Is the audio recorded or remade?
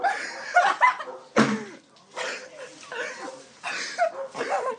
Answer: recorded